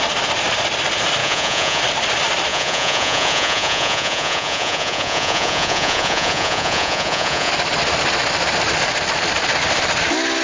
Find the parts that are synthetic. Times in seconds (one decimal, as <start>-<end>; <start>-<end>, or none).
1.2-1.8; 2.5-7.5